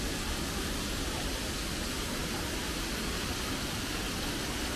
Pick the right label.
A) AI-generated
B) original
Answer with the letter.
B